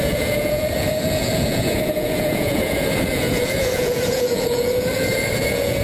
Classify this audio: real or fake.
fake